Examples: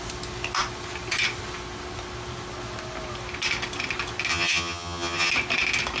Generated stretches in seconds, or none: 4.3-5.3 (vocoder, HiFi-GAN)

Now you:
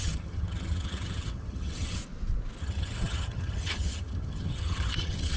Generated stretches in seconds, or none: 0.0-2.0 (vocoder, HiFi-GAN); 2.6-5.4

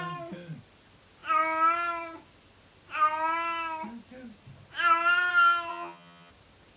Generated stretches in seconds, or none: 5.7-6.3 (vocoder, HiFi-GAN)

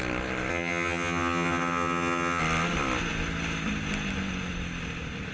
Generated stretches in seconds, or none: 0.5-2.4 (vocoder, HiFi-GAN)